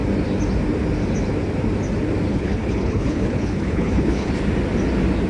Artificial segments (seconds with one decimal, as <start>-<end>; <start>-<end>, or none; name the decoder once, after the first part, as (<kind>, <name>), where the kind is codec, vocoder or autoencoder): 2.3-4.3 (codec, HILCodec)